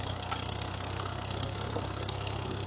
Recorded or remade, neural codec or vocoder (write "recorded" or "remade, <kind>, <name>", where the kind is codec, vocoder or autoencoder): remade, codec, SNAC